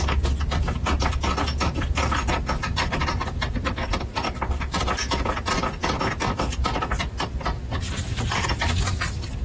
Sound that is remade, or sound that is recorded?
recorded